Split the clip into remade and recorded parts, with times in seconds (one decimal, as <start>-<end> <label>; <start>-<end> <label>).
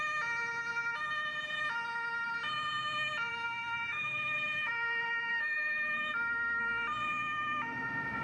0.0-3.3 recorded; 3.3-4.7 remade; 4.7-5.3 recorded; 5.3-6.6 remade; 6.6-8.2 recorded